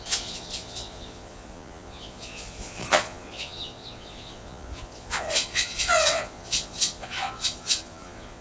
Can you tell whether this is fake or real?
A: fake